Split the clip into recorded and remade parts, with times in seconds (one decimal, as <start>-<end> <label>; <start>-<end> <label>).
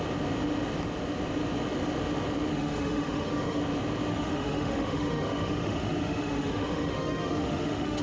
0.0-2.5 recorded; 2.5-3.6 remade; 3.6-4.1 recorded; 4.1-8.0 remade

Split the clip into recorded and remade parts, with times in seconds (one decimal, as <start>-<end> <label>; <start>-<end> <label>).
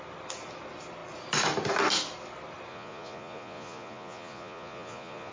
0.0-2.7 recorded; 2.7-5.3 remade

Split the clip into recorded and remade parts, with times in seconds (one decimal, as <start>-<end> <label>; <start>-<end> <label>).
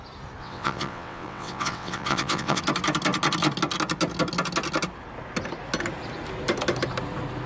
0.0-0.4 recorded; 0.4-2.6 remade; 2.6-7.5 recorded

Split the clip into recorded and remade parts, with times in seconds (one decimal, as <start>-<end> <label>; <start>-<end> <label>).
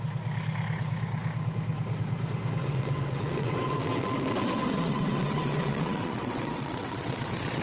0.0-2.6 recorded; 2.6-7.6 remade